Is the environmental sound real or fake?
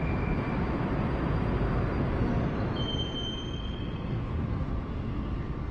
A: real